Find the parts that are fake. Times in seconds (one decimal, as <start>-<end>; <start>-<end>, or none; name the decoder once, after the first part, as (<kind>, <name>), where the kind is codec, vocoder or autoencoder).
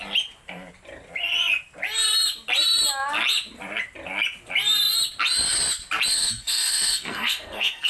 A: 6.1-7.9 (codec, SNAC)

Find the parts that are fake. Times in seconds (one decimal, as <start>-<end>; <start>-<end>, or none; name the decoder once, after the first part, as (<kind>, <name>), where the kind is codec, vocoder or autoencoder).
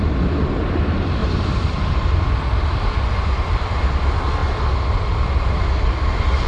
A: 1.2-2.2 (vocoder, BigVGAN v2)